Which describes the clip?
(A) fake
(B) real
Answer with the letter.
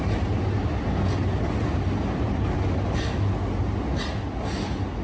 B